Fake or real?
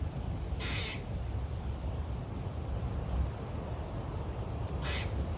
real